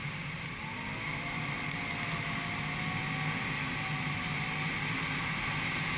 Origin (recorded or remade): recorded